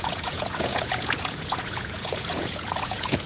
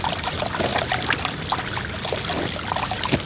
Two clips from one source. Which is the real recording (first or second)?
second